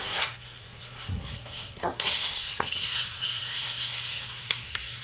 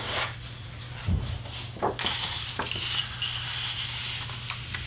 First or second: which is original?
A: second